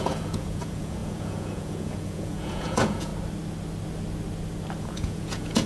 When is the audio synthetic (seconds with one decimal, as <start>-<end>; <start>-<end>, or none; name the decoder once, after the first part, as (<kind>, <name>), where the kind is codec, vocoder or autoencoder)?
0.0-3.1 (vocoder, Vocos); 4.8-5.7